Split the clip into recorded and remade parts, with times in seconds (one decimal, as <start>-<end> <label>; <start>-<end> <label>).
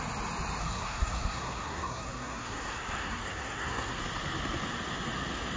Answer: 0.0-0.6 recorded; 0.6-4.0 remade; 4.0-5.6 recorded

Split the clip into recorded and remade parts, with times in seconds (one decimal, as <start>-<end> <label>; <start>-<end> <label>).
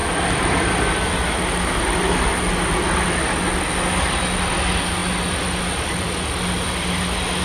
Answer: 0.0-7.4 recorded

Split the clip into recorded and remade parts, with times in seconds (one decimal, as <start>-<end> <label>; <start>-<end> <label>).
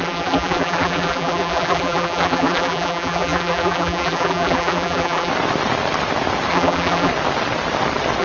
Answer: 0.0-5.3 remade; 5.3-6.5 recorded; 6.5-7.1 remade; 7.1-8.2 recorded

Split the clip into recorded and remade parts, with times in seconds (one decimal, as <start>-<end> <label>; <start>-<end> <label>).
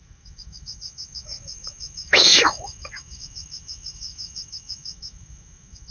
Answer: 0.0-5.9 remade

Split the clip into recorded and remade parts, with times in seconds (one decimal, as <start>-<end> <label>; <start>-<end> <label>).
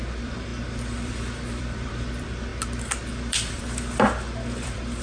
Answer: 0.0-2.5 remade; 2.5-3.1 recorded; 3.1-5.0 remade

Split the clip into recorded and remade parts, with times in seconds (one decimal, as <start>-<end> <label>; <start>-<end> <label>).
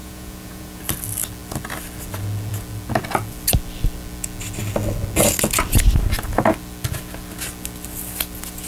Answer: 0.0-0.8 remade; 0.8-8.7 recorded